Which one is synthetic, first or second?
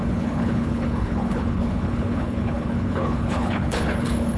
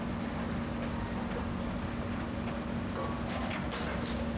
first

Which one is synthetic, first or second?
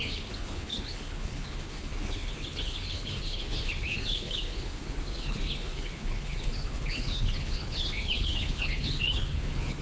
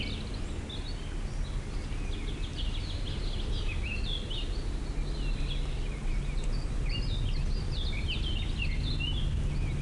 first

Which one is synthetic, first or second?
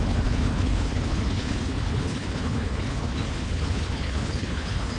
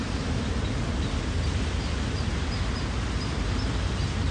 first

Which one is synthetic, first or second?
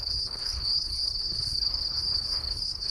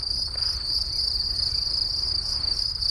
first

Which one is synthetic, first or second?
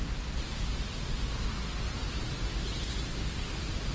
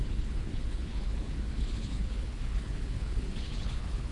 second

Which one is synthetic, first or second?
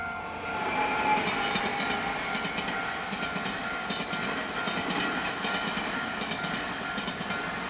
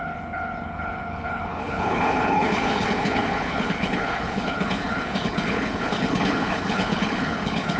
second